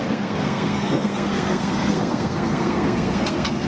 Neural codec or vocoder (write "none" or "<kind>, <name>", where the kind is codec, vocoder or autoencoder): codec, SNAC